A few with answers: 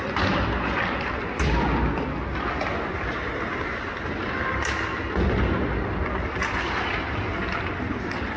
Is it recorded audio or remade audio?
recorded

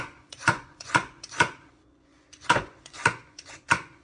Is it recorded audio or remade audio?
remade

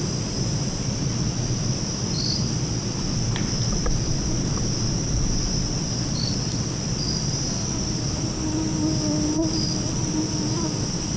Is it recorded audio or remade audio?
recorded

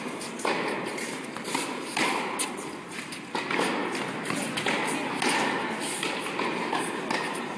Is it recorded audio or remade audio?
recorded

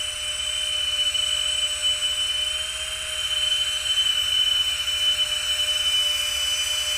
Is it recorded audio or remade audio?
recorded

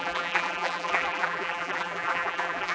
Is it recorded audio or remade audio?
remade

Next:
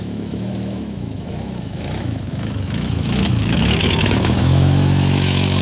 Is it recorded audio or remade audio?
remade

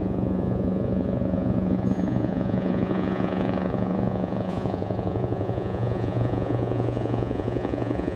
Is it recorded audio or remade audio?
remade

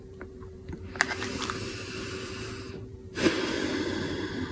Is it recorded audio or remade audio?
remade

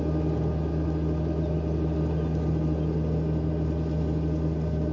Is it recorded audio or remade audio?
recorded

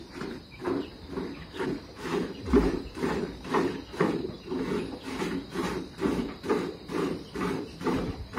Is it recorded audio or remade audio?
remade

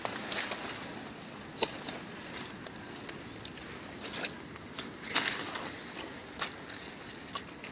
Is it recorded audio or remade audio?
recorded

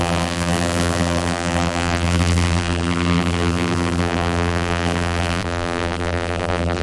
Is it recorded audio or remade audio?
remade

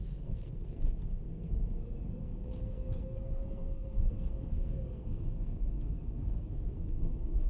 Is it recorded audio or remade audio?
remade